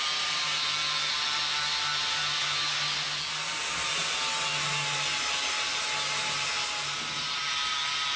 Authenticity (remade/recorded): recorded